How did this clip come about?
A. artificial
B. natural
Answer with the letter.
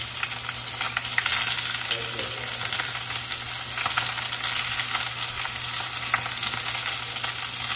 B